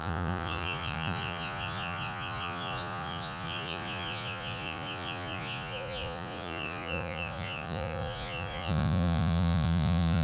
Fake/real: fake